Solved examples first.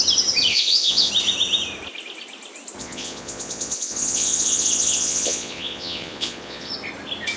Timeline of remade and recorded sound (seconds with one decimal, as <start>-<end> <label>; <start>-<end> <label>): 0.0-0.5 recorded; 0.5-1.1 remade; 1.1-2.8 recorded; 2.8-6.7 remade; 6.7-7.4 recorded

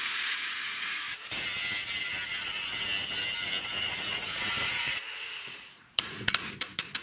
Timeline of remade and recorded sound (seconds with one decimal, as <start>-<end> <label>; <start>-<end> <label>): 0.0-1.2 remade; 1.2-3.8 recorded; 3.8-7.0 remade

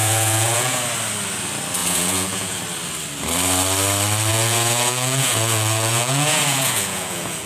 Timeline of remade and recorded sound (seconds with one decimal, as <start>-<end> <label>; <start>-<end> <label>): 0.0-0.8 remade; 0.8-1.8 recorded; 1.8-2.6 remade; 2.6-4.3 recorded; 4.3-7.5 remade